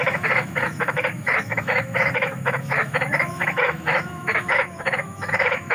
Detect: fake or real fake